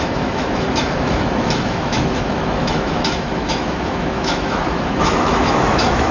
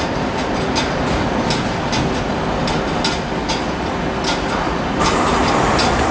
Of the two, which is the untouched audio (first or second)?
second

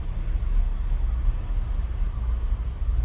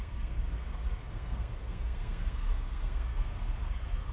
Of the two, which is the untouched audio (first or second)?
first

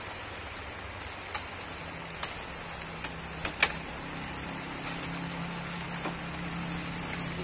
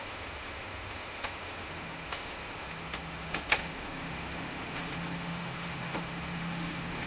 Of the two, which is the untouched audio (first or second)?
first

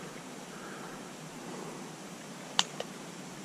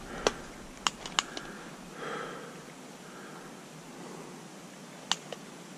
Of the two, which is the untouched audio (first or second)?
second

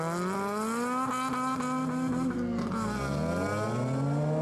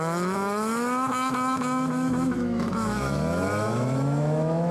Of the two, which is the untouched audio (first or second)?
first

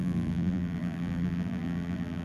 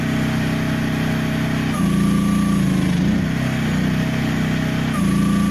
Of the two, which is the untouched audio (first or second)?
second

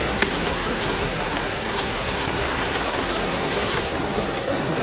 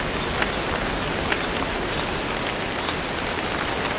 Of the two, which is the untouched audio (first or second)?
second